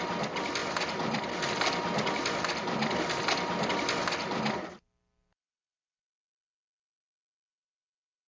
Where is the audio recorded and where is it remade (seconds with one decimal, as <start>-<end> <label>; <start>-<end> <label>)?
0.0-0.6 recorded; 0.6-3.3 remade; 3.3-4.2 recorded; 4.2-7.5 remade; 7.5-8.3 recorded